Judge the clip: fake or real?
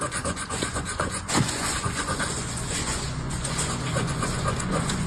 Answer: fake